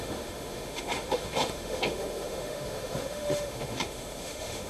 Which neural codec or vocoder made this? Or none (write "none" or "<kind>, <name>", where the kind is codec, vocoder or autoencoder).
autoencoder, DAC-VAE